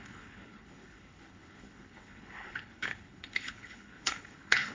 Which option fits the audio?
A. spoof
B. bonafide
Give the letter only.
A